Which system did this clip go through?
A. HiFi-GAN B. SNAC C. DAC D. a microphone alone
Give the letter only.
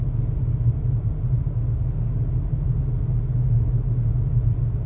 D